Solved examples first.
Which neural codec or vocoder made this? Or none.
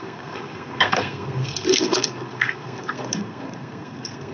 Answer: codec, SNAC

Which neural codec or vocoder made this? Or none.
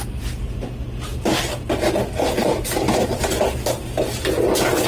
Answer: none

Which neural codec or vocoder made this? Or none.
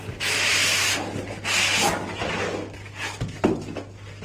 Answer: none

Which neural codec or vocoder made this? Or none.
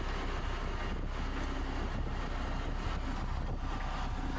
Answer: none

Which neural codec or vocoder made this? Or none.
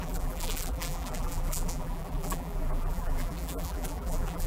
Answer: vocoder, BigVGAN v2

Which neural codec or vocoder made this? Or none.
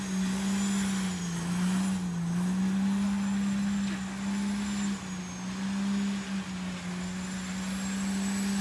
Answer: none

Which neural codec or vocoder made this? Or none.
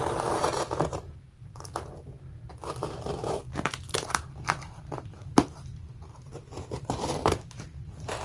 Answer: vocoder, BigVGAN v2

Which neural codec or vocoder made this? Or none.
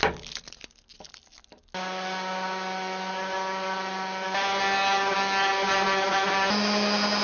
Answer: none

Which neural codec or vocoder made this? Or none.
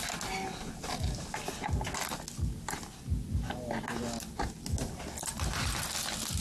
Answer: none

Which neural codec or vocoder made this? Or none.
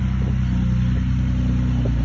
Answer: none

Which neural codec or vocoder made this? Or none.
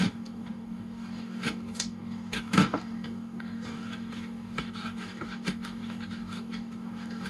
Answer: codec, DAC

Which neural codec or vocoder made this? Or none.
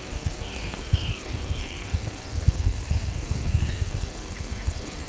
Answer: codec, SNAC